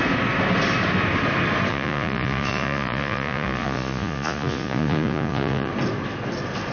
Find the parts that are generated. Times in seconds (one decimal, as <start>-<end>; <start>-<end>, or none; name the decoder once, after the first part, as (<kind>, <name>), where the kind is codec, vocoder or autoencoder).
1.7-5.7 (vocoder, Vocos)